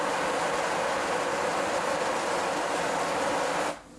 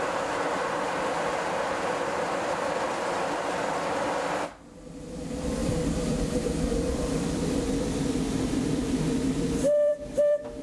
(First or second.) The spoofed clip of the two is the second